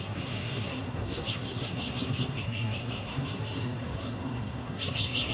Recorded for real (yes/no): no